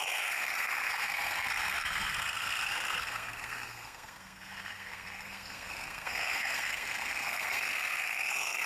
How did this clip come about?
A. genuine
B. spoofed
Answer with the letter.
B